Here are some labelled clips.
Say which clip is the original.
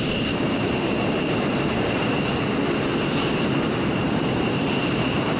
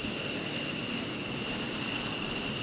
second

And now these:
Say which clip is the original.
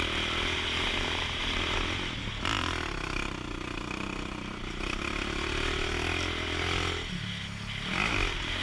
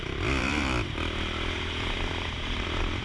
first